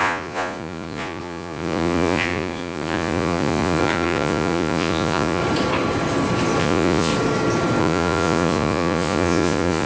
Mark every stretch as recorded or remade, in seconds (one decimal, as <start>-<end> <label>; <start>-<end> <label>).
0.0-5.4 remade; 5.4-6.6 recorded; 6.6-7.1 remade; 7.1-7.8 recorded; 7.8-9.9 remade